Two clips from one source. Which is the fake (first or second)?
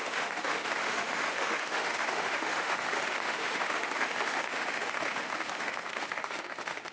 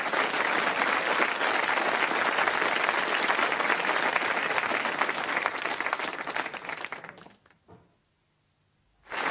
first